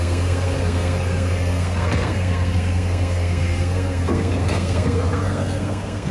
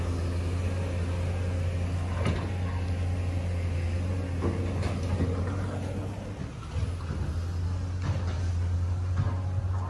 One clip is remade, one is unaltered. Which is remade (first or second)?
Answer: first